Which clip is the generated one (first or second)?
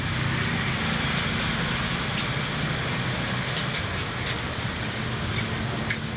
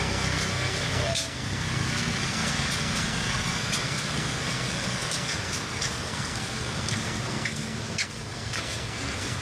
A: second